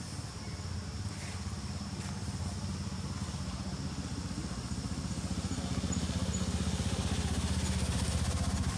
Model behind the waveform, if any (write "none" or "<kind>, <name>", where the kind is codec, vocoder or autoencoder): none